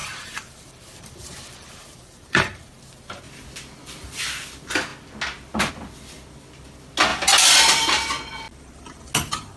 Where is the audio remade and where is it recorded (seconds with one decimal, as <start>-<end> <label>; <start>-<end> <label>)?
0.0-2.8 remade; 2.8-9.6 recorded